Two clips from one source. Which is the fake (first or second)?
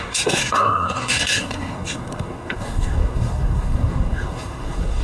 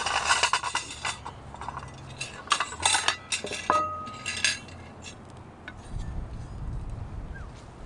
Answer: first